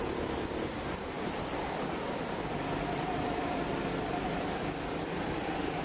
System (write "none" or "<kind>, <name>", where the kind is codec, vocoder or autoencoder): vocoder, BigVGAN v2